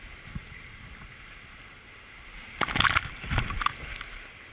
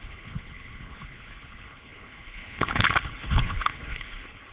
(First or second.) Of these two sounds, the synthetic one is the second